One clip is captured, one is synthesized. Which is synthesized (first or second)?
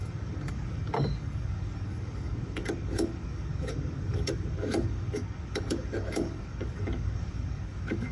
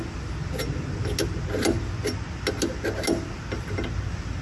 first